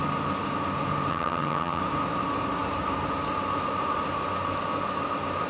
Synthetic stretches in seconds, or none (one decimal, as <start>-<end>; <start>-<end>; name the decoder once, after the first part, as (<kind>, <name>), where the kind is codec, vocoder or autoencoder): 1.1-1.8 (vocoder, HiFi-GAN)